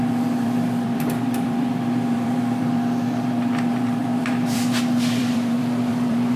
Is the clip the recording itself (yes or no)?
no